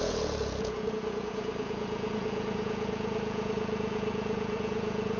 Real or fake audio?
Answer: fake